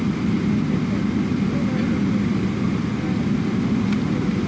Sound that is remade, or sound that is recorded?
recorded